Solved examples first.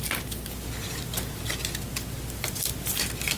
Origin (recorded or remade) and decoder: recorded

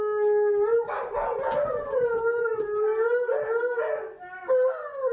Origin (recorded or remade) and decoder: recorded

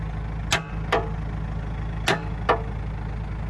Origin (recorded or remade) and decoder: recorded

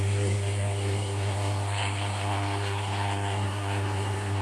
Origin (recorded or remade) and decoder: remade, codec, SNAC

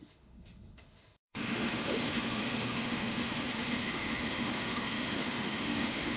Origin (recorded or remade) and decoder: remade, autoencoder, DAC-VAE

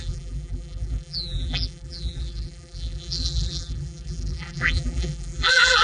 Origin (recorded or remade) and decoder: remade, vocoder, BigVGAN v2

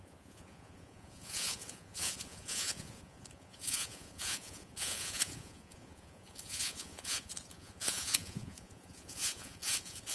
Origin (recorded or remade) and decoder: remade, vocoder, Vocos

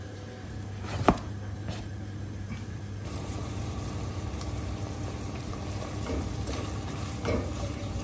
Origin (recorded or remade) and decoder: remade, vocoder, BigVGAN v2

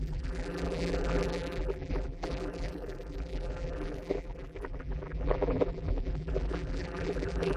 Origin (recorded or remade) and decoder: remade, vocoder, BigVGAN v2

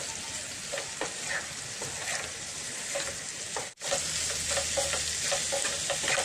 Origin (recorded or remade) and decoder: recorded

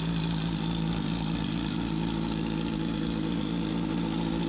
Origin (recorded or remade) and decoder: recorded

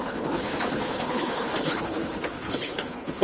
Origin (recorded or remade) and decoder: remade, codec, HILCodec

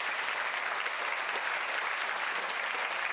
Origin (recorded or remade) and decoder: recorded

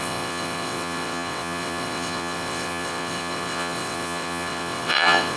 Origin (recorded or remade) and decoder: remade, vocoder, WaveNeXt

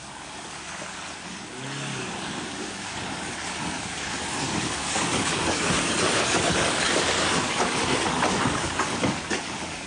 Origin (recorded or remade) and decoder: remade, codec, DAC